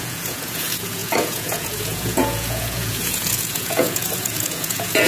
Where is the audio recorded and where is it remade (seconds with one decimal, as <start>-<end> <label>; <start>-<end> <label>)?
0.0-5.1 remade